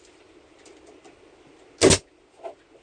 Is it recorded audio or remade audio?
recorded